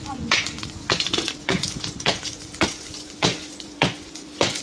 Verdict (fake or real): fake